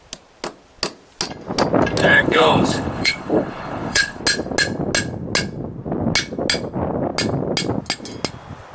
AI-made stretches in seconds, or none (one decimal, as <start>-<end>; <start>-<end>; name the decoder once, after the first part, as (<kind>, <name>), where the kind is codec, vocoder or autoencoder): 2.0-4.2 (codec, HILCodec)